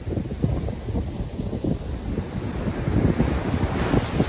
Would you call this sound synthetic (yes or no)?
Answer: no